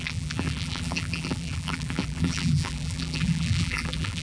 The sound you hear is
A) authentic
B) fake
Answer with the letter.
B